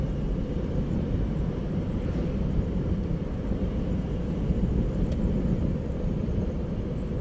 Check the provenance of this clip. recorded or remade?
remade